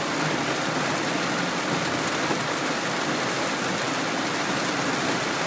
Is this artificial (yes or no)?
no